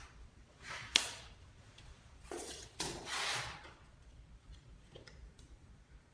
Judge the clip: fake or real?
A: fake